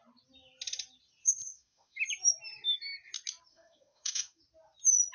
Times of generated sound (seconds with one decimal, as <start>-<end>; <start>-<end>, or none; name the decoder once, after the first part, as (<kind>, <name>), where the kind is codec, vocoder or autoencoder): 1.2-2.0 (autoencoder, DAC-VAE); 3.5-4.4